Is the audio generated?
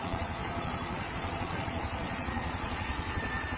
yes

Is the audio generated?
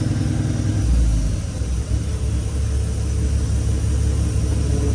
no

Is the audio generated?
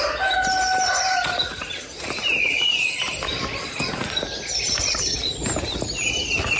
no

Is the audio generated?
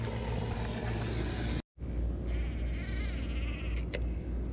no